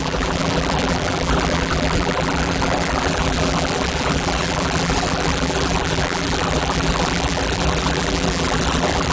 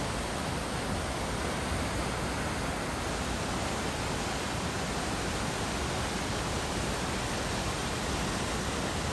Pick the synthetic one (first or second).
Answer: first